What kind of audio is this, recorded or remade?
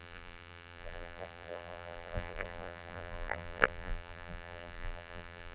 remade